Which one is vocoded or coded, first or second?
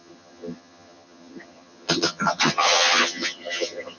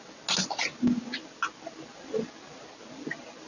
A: first